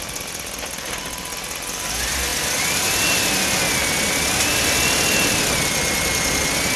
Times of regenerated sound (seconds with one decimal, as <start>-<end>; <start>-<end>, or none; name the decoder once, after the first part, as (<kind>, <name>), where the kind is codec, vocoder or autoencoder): none